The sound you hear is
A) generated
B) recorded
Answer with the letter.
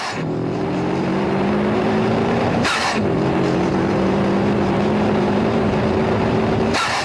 A